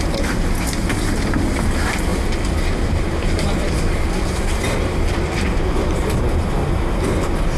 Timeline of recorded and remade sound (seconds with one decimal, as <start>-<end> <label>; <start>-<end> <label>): 0.0-7.6 recorded